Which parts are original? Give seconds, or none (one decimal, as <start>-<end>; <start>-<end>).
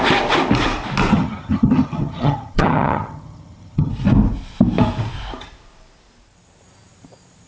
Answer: 0.0-1.1; 3.9-7.5